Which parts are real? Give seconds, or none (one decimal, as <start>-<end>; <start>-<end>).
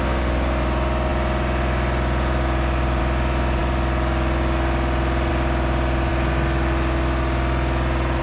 0.0-8.2